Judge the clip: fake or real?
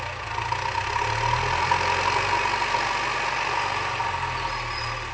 real